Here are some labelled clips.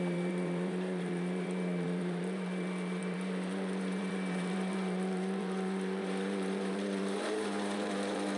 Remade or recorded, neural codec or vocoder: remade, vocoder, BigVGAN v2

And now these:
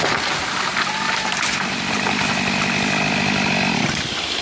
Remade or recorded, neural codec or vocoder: recorded